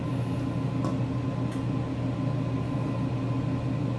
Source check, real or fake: real